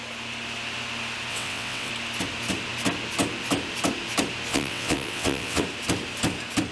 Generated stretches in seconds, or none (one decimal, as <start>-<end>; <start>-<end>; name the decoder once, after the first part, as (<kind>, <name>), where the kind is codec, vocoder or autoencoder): 1.3-1.9 (vocoder, WaveNeXt); 4.5-5.6